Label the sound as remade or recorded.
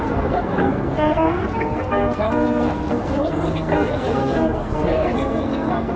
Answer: remade